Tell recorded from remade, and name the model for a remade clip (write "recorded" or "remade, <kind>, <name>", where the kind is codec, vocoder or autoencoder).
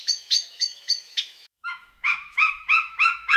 remade, autoencoder, DAC-VAE